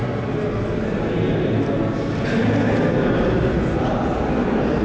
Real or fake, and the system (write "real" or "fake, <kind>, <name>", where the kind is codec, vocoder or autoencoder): real